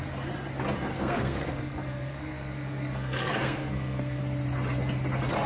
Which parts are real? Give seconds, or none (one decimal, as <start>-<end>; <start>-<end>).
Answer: 0.0-0.9; 4.2-5.5